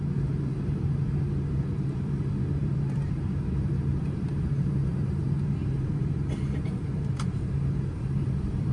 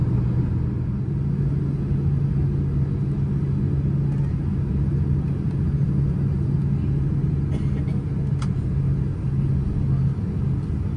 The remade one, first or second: first